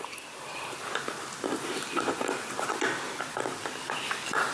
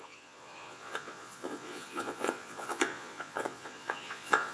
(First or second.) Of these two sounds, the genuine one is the first